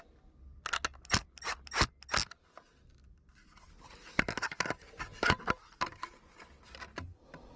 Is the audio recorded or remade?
recorded